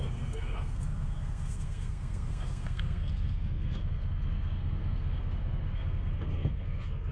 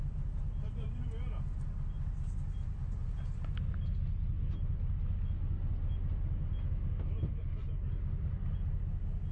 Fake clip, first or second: first